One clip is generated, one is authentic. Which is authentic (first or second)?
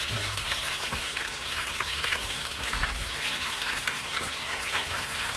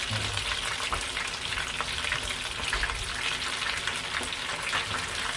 second